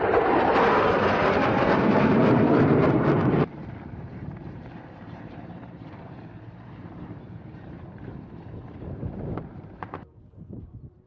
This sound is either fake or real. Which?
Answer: fake